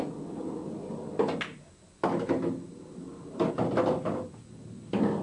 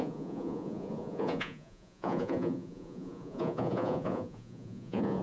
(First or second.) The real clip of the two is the first